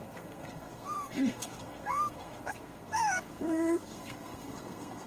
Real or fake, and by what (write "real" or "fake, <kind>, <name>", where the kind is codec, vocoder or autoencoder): fake, codec, SNAC